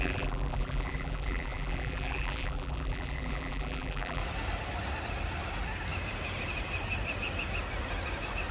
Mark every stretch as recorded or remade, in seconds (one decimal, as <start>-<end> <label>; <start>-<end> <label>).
0.0-4.2 remade; 4.2-8.5 recorded